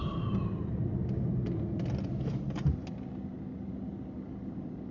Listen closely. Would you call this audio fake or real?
real